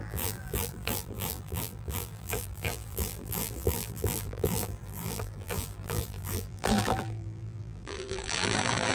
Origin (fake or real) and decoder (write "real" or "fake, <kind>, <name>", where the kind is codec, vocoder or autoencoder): fake, vocoder, BigVGAN v2